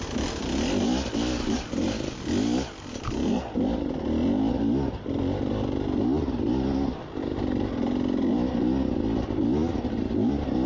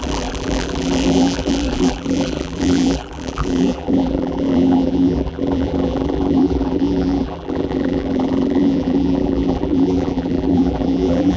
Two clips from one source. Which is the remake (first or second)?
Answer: second